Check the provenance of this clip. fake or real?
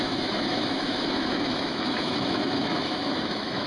fake